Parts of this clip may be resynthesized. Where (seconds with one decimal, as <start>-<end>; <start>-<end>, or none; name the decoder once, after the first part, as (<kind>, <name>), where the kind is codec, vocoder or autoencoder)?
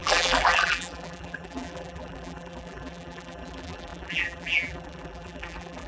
0.0-5.9 (vocoder, BigVGAN v2)